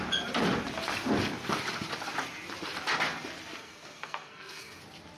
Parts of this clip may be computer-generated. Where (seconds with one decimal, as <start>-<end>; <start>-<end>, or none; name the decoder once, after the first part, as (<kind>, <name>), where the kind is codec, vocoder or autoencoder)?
3.6-4.8 (codec, SNAC)